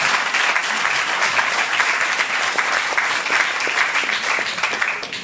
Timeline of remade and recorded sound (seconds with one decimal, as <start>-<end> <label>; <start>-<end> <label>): 0.0-5.2 recorded